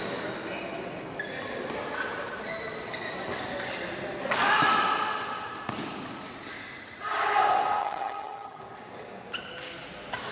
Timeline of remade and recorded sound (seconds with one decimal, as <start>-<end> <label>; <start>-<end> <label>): 0.0-7.8 recorded; 7.8-8.6 remade; 8.6-10.3 recorded